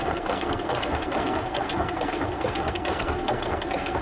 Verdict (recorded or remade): remade